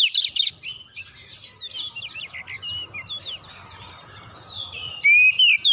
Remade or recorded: recorded